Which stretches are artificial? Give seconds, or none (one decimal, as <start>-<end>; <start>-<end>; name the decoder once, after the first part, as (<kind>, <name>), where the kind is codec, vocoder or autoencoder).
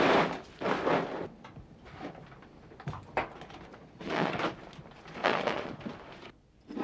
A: 3.7-4.4 (vocoder, Vocos); 5.2-5.8